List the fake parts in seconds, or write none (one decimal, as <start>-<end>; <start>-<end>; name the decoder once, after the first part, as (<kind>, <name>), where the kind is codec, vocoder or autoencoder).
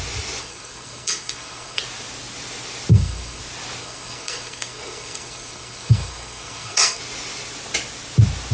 0.4-1.8 (codec, SNAC); 2.9-3.4; 3.8-7.0